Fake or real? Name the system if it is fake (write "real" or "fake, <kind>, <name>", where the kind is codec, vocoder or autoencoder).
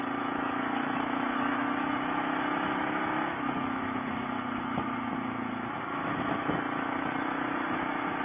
fake, autoencoder, DAC-VAE